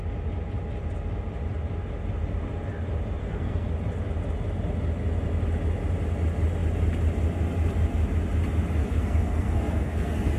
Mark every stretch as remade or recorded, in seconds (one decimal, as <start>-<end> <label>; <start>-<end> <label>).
0.0-3.2 recorded; 3.2-3.7 remade; 3.7-8.8 recorded; 8.8-10.4 remade